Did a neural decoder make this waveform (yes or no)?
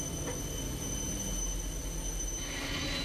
no